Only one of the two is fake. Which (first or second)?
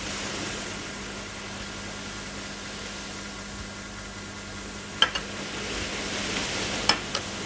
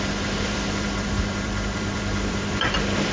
second